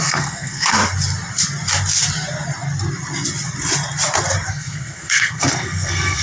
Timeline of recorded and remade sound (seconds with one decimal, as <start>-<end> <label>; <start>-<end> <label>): 0.0-0.8 remade; 0.8-4.5 recorded; 4.5-6.2 remade